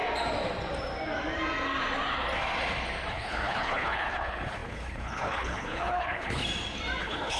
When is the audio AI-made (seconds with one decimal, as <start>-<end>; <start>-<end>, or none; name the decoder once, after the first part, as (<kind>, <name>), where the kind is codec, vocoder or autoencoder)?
3.1-6.4 (codec, HILCodec); 7.0-7.4